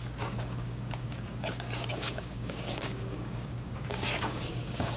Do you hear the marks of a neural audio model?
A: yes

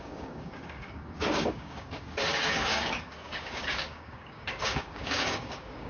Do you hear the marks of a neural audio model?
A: yes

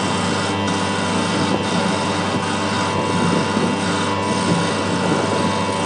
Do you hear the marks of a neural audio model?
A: no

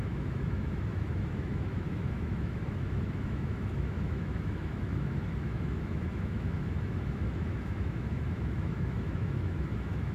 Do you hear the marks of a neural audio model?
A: yes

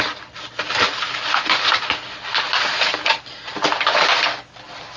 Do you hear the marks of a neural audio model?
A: yes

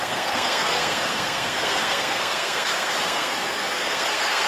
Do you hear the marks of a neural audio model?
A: yes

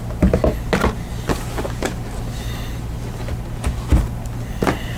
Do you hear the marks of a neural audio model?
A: no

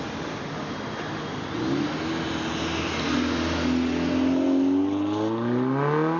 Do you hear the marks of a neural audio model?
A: no